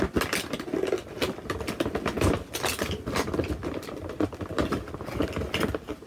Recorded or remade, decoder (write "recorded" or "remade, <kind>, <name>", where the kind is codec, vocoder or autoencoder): recorded